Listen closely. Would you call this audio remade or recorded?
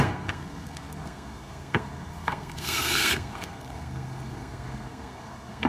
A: remade